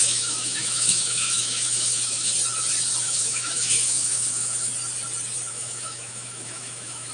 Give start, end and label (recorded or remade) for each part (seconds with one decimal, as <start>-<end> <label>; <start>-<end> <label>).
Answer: 0.0-2.3 remade; 2.3-3.0 recorded; 3.0-4.7 remade; 4.7-5.5 recorded; 5.5-7.1 remade